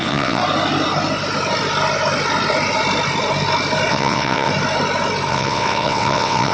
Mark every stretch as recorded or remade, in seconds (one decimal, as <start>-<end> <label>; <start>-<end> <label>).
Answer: 0.0-0.4 remade; 0.4-3.9 recorded; 3.9-4.5 remade; 4.5-5.3 recorded; 5.3-6.5 remade